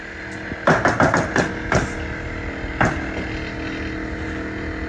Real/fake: real